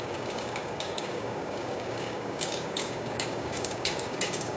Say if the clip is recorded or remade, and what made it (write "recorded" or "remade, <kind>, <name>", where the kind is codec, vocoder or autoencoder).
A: remade, codec, DAC